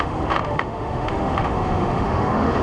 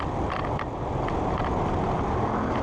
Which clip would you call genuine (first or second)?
second